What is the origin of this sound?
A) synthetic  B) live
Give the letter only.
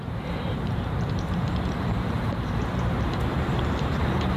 A